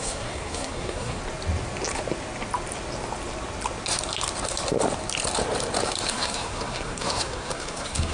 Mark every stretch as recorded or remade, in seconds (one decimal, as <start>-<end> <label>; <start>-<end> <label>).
0.0-1.2 remade; 1.2-6.1 recorded; 6.1-8.1 remade